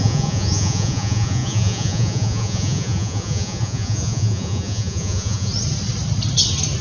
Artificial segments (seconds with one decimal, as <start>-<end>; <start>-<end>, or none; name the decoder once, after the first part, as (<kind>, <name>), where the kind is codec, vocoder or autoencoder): 0.0-5.5 (vocoder, Vocos)